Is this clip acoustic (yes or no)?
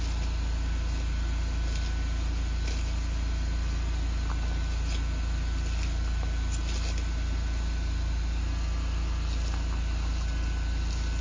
yes